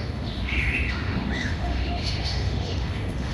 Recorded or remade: remade